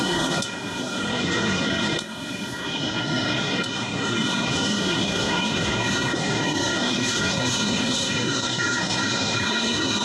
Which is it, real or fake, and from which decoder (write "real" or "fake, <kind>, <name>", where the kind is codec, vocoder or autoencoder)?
fake, codec, SNAC